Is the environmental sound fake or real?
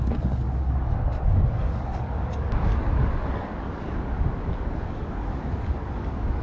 fake